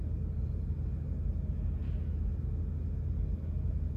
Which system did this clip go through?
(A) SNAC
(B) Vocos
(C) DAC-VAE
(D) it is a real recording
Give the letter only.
D